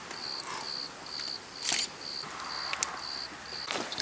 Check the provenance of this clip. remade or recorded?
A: recorded